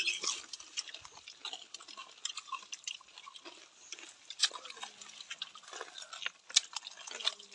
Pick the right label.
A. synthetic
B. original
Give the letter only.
B